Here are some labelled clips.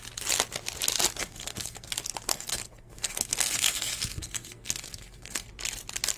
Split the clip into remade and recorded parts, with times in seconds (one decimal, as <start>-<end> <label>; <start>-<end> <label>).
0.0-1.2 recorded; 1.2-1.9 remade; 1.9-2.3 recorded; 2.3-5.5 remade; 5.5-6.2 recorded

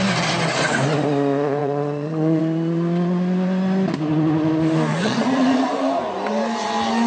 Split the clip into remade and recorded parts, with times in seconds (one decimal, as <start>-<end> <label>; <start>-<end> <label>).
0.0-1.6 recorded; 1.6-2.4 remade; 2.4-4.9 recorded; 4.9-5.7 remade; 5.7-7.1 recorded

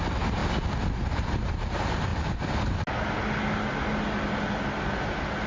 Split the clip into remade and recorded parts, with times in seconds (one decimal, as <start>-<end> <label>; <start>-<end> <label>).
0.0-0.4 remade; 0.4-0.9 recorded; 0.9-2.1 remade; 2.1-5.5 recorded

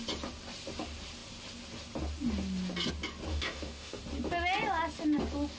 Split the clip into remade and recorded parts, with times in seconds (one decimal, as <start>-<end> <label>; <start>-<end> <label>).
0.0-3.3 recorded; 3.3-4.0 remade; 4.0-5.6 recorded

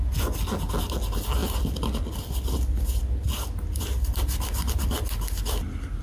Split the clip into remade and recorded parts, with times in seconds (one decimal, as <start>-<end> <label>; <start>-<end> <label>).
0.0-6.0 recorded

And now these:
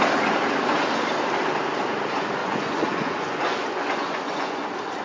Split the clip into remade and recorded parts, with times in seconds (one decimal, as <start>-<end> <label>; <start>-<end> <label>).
0.0-2.4 recorded; 2.4-4.6 remade; 4.6-5.0 recorded